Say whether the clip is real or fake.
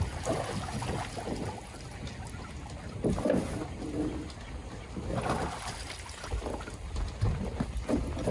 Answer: real